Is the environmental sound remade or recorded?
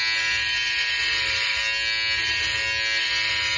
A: recorded